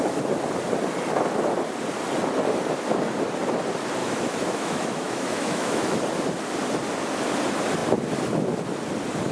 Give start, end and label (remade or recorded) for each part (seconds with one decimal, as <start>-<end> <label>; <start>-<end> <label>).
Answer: 0.0-4.0 recorded; 4.0-6.0 remade; 6.0-9.3 recorded